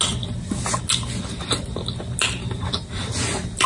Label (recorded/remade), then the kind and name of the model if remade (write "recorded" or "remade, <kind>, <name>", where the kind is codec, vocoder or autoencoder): recorded